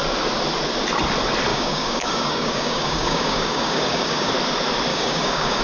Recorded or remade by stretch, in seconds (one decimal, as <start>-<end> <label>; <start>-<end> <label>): 0.0-1.5 recorded; 1.5-4.3 remade; 4.3-4.9 recorded; 4.9-5.6 remade